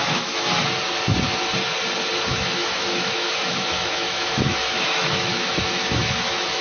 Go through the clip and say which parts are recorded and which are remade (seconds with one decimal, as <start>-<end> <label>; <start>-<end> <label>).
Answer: 0.0-0.5 remade; 0.5-2.3 recorded; 2.3-6.6 remade